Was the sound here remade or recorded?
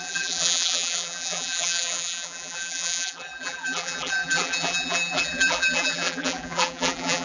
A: remade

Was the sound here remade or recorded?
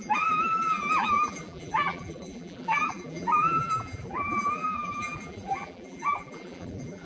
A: remade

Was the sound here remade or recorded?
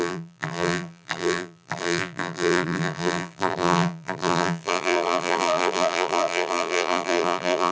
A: remade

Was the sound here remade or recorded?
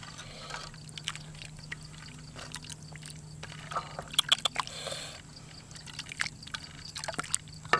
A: recorded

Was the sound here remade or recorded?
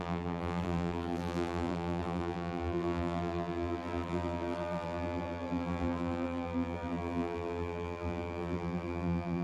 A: remade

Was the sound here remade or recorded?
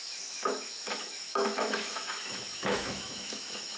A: remade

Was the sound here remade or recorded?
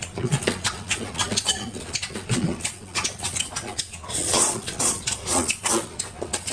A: remade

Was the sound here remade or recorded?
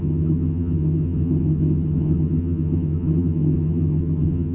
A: remade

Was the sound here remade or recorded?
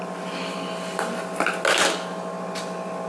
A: recorded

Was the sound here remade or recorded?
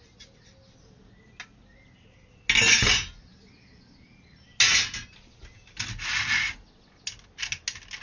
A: recorded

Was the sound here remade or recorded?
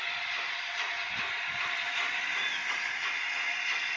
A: recorded